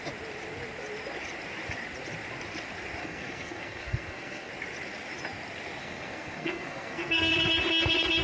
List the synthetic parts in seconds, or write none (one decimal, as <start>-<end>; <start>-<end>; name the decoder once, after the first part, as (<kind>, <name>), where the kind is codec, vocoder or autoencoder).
3.0-4.5 (codec, SNAC); 5.8-7.3

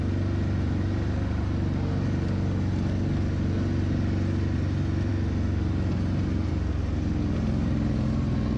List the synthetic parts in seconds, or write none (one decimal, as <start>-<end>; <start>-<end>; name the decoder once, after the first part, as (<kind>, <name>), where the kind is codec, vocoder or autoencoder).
none

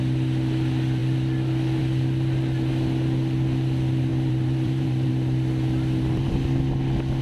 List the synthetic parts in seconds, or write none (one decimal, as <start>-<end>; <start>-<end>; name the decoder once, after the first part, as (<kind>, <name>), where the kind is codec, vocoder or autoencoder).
4.1-5.1 (vocoder, BigVGAN v2)

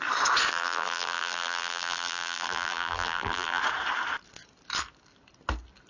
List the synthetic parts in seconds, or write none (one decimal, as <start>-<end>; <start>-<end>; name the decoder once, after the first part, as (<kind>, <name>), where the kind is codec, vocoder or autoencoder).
0.5-3.6 (vocoder, BigVGAN v2)

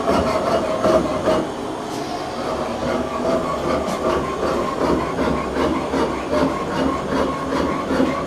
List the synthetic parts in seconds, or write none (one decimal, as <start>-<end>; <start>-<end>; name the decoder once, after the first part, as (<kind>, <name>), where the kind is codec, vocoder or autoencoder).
2.8-3.3 (codec, DAC)

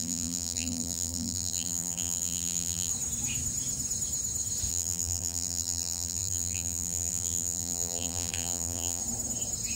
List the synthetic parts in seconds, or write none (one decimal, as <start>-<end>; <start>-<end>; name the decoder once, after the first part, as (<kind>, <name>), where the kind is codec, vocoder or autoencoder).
0.0-2.9 (vocoder, BigVGAN v2); 4.7-9.0